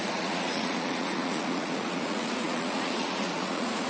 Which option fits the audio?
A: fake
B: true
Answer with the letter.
A